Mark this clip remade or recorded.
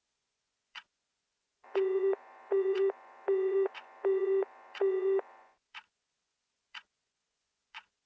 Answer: remade